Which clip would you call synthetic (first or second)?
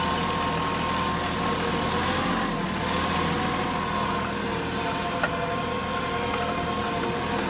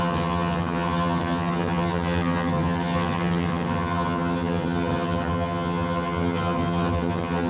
second